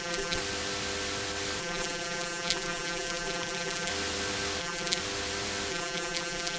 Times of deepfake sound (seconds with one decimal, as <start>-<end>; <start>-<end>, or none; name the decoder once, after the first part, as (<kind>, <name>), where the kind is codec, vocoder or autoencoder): 0.0-0.4 (vocoder, BigVGAN v2); 1.6-3.9; 4.6-5.0; 5.7-6.6